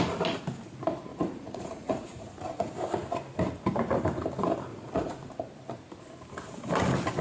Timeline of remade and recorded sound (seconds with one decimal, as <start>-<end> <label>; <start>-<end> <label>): 0.0-1.1 recorded; 1.1-2.7 remade; 2.7-4.7 recorded; 4.7-5.3 remade; 5.3-7.2 recorded